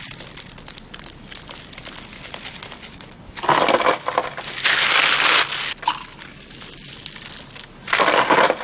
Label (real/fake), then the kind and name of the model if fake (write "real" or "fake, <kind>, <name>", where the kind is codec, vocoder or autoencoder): real